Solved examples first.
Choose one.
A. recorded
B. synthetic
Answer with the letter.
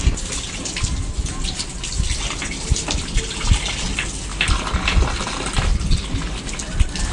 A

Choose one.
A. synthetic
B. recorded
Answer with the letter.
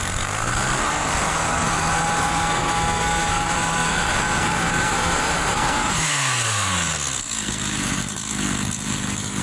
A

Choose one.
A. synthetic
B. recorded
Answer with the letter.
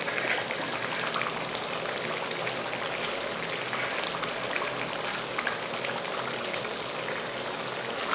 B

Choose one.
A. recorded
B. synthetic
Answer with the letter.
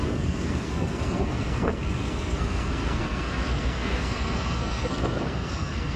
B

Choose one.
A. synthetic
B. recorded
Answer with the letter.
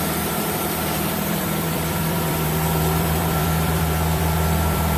A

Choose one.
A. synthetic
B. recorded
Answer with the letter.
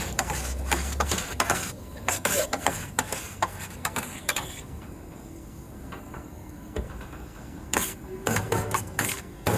A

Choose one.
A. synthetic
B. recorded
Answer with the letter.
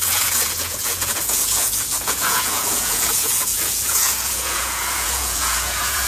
A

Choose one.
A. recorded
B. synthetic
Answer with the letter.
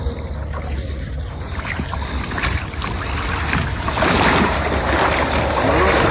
A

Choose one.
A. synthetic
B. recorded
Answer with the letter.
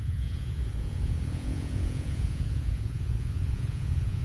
A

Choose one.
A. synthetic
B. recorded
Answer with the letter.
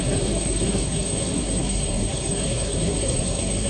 A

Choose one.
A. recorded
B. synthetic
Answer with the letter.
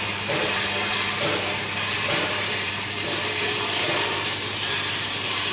B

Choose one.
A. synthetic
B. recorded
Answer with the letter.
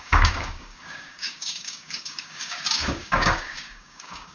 A